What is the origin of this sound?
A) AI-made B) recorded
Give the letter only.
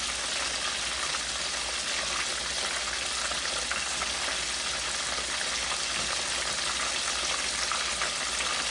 B